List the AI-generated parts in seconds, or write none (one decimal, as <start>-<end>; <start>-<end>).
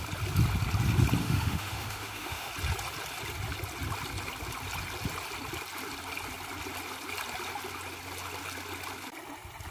1.2-2.5